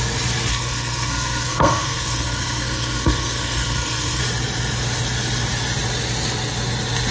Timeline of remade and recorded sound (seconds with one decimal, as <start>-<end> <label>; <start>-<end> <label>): 0.0-0.5 recorded; 0.5-4.2 remade; 4.2-7.1 recorded